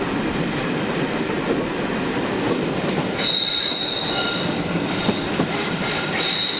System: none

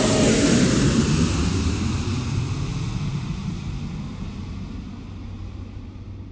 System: none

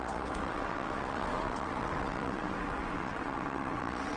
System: vocoder, WaveNeXt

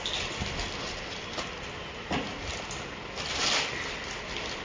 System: none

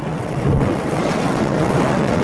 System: vocoder, WaveNeXt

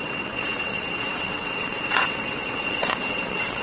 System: vocoder, WaveNeXt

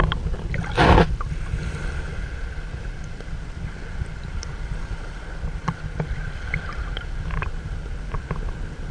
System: none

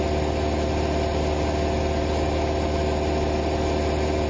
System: none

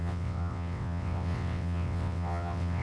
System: vocoder, WaveNeXt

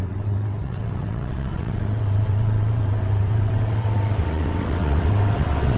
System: vocoder, WaveNeXt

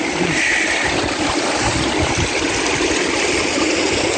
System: none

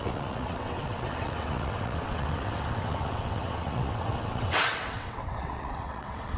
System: vocoder, WaveNeXt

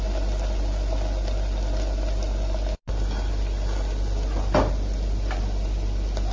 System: none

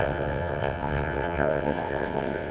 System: vocoder, WaveNeXt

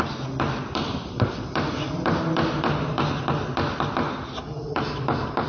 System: none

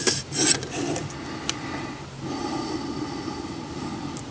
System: none